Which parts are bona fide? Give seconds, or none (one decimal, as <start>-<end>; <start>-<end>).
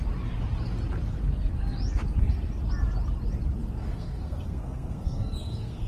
0.0-3.6